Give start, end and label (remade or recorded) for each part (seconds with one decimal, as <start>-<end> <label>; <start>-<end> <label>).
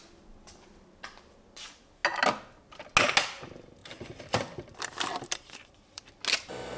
0.0-3.8 recorded; 3.8-6.1 remade; 6.1-6.8 recorded